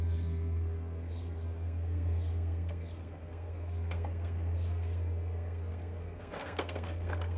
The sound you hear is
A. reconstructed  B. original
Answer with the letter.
A